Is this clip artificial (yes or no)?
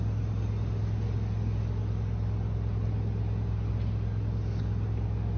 no